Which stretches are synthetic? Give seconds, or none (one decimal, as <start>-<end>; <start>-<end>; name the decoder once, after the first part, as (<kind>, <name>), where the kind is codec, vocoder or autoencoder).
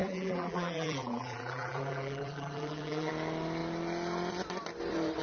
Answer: 0.0-3.1 (vocoder, BigVGAN v2)